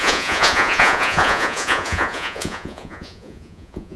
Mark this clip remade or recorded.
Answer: remade